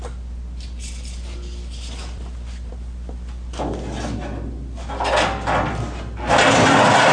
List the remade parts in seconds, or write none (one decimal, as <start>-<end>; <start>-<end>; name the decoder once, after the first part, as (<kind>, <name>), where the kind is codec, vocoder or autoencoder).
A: none